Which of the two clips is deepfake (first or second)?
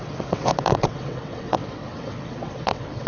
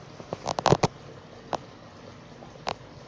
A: first